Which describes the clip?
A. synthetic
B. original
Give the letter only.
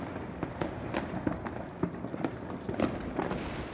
B